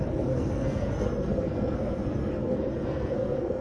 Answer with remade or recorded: remade